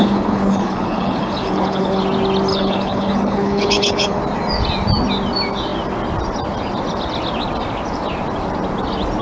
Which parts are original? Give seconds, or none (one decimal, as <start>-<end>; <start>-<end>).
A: 2.0-2.5; 4.2-9.2